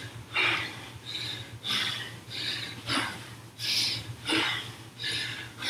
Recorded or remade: recorded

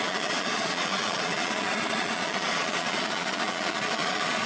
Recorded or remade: remade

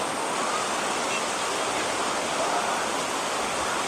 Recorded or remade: recorded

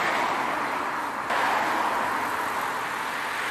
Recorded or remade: recorded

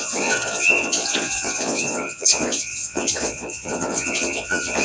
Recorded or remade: remade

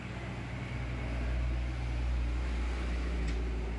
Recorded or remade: recorded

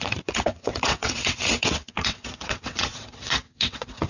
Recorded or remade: remade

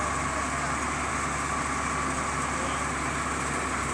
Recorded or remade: recorded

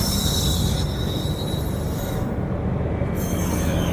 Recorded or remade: recorded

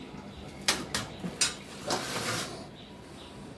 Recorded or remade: recorded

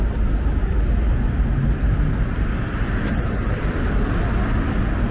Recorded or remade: recorded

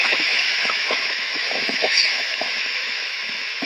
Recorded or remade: remade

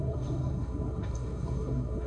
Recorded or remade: remade